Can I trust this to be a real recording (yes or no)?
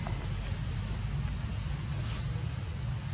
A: yes